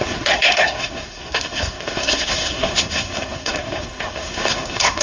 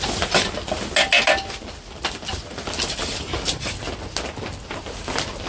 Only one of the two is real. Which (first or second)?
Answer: second